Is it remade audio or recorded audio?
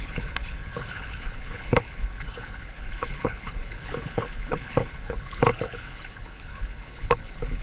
remade